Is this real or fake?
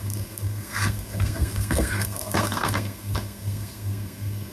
fake